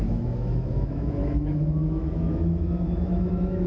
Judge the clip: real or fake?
fake